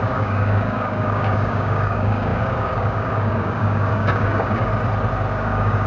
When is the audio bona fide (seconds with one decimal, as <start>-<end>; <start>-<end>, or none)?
4.7-5.3